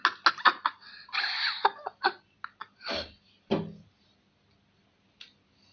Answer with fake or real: real